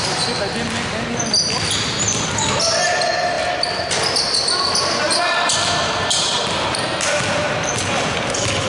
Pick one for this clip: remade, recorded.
recorded